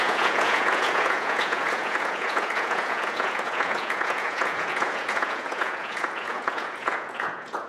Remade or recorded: remade